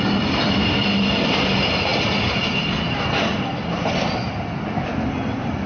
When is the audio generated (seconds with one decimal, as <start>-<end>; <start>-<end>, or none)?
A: none